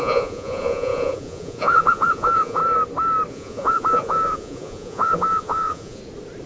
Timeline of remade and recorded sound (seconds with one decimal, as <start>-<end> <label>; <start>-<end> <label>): 0.0-2.6 remade; 2.6-3.3 recorded; 3.3-6.0 remade; 6.0-6.5 recorded